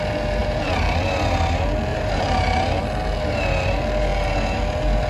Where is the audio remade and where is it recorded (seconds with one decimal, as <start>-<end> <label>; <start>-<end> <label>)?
0.0-0.4 recorded; 0.4-1.0 remade; 1.0-1.9 recorded; 1.9-2.6 remade; 2.6-5.1 recorded